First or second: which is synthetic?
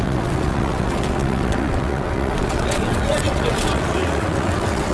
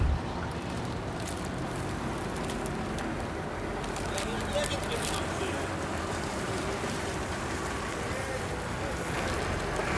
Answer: first